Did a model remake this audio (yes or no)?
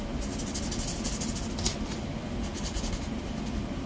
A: no